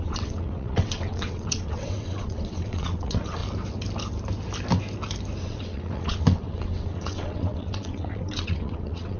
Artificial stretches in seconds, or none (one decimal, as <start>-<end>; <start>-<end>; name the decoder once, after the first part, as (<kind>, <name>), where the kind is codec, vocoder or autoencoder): 0.0-3.4 (vocoder, WaveNeXt); 5.4-9.2